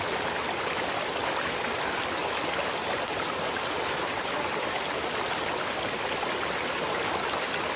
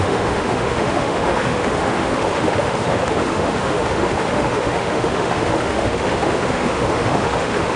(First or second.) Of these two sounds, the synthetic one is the second